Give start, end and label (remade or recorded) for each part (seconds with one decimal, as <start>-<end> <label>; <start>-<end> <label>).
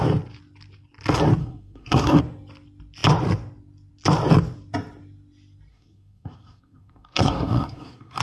0.0-1.4 recorded; 1.4-2.2 remade; 2.2-5.7 recorded; 5.7-8.2 remade